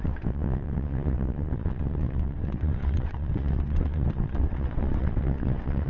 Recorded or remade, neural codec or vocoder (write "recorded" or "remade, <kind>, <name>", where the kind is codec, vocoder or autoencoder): remade, vocoder, WaveNeXt